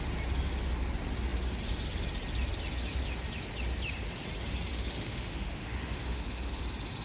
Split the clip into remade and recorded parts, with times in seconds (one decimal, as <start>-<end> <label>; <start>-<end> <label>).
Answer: 0.0-4.7 recorded; 4.7-6.6 remade; 6.6-7.0 recorded